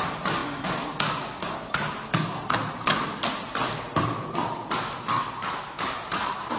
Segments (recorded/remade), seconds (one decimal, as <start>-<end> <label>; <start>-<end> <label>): 0.0-6.6 recorded